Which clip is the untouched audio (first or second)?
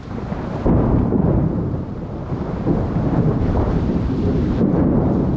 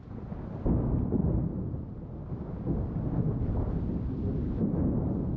second